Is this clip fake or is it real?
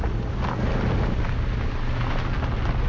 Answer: real